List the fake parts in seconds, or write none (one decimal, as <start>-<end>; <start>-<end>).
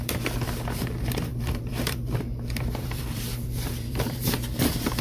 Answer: 1.3-4.3